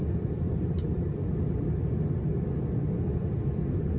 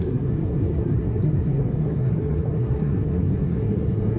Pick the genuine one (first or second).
first